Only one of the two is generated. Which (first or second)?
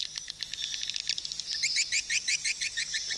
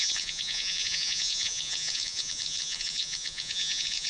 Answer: second